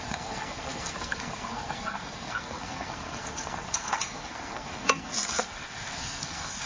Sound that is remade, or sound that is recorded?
remade